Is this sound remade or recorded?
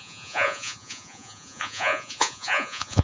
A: remade